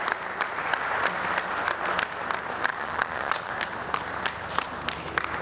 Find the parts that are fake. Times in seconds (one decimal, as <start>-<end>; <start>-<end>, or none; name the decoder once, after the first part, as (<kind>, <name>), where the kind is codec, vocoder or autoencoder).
2.7-3.5 (vocoder, Vocos)